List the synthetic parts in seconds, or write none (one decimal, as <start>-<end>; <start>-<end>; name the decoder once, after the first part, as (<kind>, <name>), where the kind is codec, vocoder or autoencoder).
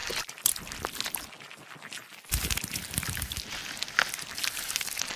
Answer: 3.1-3.6 (vocoder, BigVGAN v2); 4.1-5.2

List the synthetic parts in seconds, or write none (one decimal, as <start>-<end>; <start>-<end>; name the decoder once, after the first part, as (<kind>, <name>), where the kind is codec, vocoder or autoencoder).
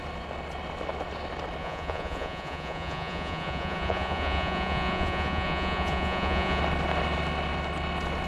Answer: 1.6-6.6 (vocoder, Vocos)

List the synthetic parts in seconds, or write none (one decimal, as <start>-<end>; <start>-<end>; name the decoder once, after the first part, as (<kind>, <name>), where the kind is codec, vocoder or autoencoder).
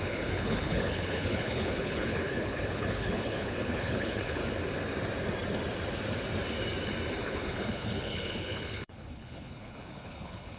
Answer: 0.0-4.4 (codec, HILCodec); 7.2-10.6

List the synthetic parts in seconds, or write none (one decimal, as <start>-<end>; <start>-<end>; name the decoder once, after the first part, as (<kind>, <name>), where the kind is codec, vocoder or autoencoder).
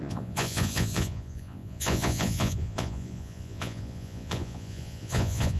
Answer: 0.0-5.6 (vocoder, Vocos)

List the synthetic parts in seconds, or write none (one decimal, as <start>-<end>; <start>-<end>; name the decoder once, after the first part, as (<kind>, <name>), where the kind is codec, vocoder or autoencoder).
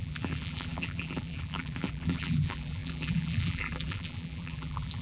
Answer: 0.0-5.0 (vocoder, BigVGAN v2)